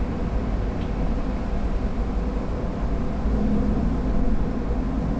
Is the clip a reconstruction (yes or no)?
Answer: no